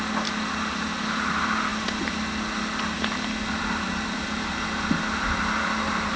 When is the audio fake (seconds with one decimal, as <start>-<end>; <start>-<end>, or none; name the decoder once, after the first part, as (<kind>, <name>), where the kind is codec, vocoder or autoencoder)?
none